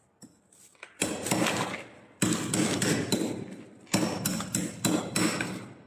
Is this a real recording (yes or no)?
yes